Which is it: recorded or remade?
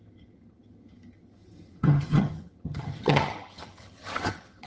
remade